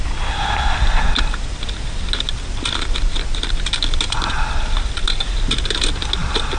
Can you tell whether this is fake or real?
real